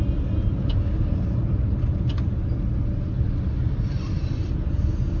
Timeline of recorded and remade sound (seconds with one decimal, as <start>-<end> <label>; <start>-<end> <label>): 0.0-1.4 recorded; 1.4-4.5 remade; 4.5-5.2 recorded